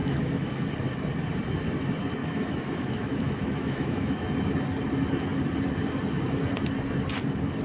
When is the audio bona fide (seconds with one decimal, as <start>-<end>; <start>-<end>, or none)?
0.7-2.2; 4.3-7.6